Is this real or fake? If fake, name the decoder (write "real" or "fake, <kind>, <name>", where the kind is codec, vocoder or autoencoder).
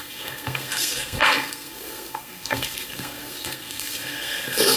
fake, codec, SNAC